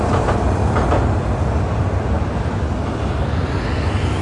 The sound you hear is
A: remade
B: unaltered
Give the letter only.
B